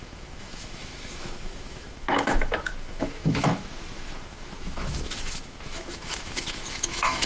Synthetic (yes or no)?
yes